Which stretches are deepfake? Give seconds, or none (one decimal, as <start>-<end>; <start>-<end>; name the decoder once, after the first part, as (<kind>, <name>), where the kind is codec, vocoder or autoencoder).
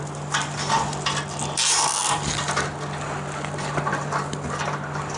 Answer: none